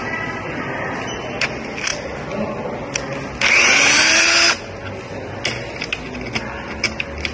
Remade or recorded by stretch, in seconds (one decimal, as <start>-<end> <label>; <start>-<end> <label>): 0.0-1.9 remade; 1.9-6.3 recorded; 6.3-7.3 remade